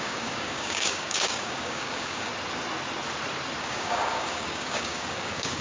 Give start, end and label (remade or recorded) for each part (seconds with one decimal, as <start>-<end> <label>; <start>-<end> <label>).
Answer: 0.0-2.3 remade; 2.3-3.6 recorded; 3.6-5.6 remade